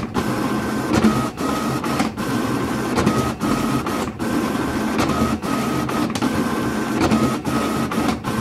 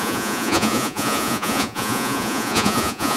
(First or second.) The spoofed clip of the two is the second